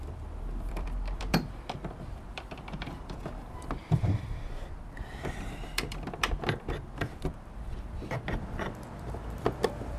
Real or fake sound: fake